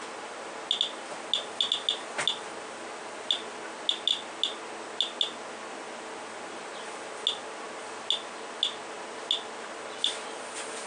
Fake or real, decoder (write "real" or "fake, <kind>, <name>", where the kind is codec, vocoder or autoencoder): real